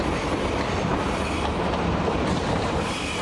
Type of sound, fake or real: real